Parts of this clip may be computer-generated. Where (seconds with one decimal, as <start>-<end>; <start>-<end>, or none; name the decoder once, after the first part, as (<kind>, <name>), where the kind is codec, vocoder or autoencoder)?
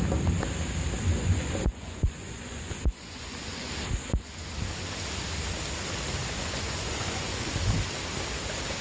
1.1-3.7 (vocoder, Vocos); 6.2-7.7